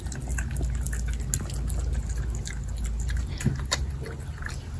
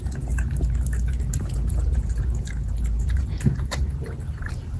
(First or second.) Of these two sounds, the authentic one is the first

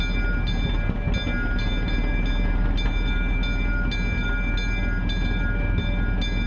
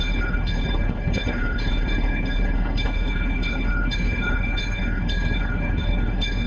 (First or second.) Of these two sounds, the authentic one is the first